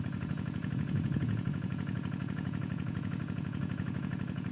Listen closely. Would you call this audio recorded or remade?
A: remade